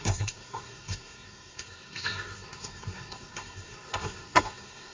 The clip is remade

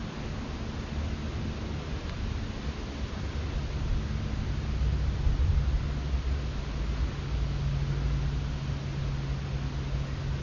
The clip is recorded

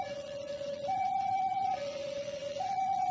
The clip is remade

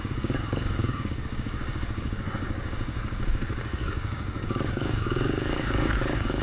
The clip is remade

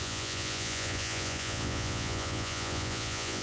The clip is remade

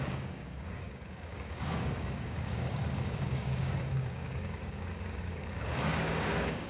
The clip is remade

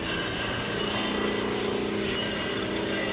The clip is recorded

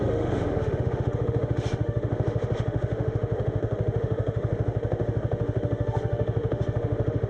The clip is remade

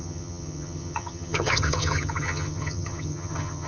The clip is remade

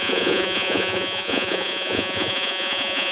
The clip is remade